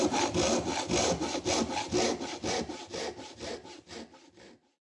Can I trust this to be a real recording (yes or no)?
yes